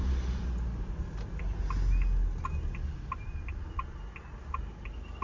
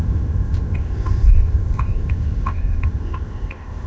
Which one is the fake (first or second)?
second